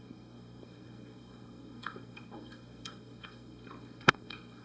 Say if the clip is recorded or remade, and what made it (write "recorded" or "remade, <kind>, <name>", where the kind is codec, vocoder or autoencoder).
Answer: remade, codec, SNAC